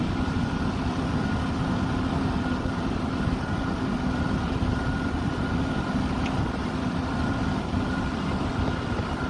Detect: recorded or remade recorded